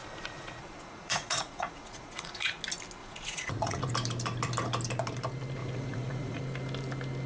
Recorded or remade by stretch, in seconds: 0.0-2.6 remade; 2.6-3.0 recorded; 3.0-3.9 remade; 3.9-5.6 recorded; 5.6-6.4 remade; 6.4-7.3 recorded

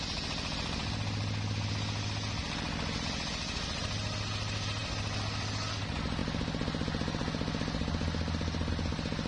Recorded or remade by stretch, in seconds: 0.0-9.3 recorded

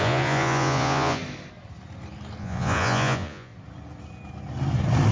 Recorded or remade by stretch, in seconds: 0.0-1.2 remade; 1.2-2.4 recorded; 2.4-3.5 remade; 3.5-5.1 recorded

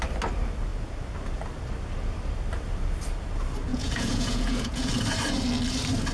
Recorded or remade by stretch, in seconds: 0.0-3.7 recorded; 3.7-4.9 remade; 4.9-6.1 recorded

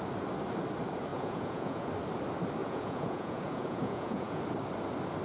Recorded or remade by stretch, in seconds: 0.0-1.1 recorded; 1.1-1.9 remade; 1.9-2.6 recorded; 2.6-4.4 remade; 4.4-5.2 recorded